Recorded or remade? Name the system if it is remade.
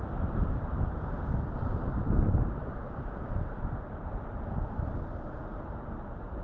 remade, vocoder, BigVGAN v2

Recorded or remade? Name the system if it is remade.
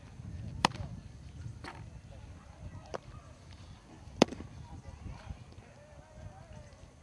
remade, vocoder, BigVGAN v2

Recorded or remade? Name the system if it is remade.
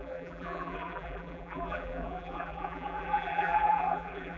remade, vocoder, BigVGAN v2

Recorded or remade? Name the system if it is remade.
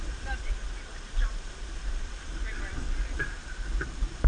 remade, vocoder, BigVGAN v2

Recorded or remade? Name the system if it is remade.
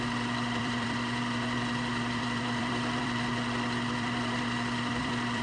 remade, vocoder, BigVGAN v2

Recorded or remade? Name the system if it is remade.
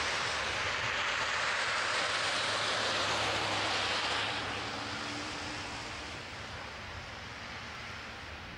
remade, vocoder, BigVGAN v2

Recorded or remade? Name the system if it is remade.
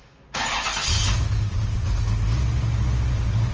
recorded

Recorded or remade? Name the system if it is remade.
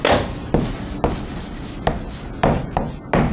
recorded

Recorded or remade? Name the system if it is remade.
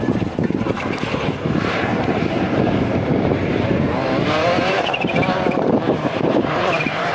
remade, vocoder, BigVGAN v2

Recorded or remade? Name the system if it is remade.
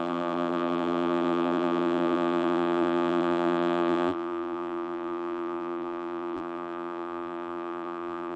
remade, vocoder, BigVGAN v2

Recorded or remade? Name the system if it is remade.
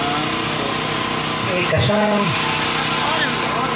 recorded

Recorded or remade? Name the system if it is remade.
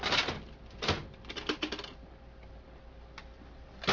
recorded